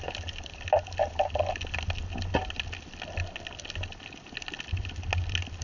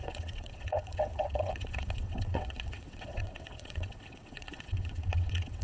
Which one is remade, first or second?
second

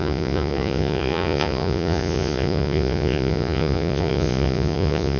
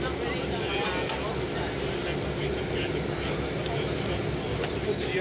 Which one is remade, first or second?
first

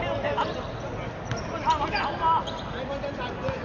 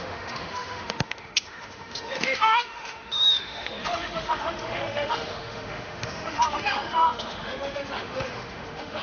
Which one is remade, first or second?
second